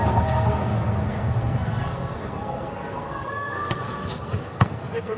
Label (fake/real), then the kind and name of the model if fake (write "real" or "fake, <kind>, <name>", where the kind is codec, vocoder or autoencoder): fake, codec, SNAC